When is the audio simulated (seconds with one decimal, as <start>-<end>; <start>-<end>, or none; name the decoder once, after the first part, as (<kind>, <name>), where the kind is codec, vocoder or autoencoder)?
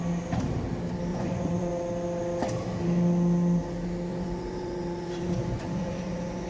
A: 1.1-1.7 (vocoder, Vocos); 4.1-6.5